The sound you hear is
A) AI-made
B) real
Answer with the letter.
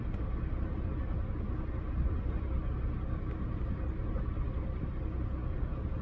B